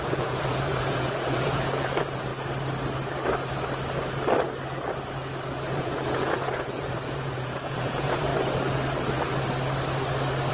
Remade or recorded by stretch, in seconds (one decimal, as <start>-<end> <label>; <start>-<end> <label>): 0.0-2.3 remade; 2.3-5.7 recorded; 5.7-8.3 remade; 8.3-10.5 recorded